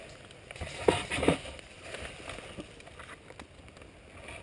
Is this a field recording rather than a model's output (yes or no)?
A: yes